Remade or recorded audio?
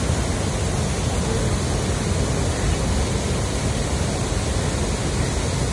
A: recorded